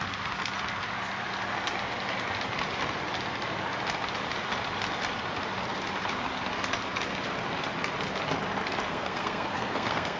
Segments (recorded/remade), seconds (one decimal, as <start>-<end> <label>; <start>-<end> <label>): 0.0-8.9 recorded; 8.9-10.2 remade